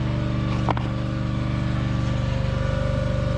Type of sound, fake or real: real